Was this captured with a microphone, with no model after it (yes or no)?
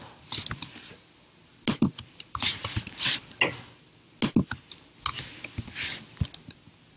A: yes